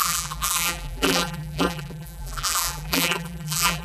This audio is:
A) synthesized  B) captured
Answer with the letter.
A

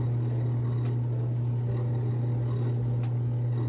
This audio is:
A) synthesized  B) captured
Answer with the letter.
B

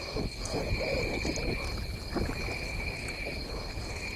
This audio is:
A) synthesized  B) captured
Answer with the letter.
B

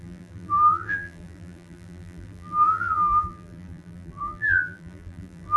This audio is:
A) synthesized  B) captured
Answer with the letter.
A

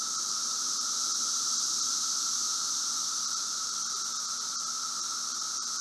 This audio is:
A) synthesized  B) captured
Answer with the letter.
A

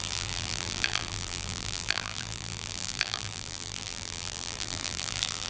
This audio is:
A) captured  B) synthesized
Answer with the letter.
B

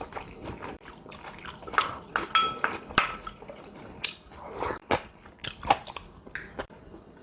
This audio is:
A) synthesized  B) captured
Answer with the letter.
A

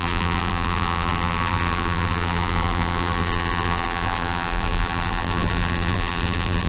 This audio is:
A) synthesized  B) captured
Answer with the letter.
A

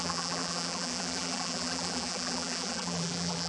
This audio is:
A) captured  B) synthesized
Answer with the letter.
B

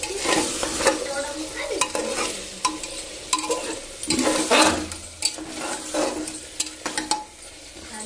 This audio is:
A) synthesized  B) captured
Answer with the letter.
B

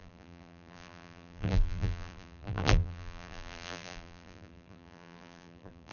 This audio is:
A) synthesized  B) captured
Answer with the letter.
A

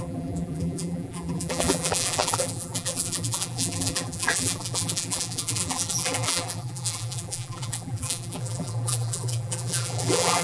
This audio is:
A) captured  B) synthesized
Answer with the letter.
B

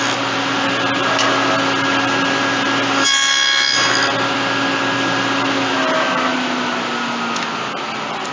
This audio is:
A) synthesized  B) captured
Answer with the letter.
B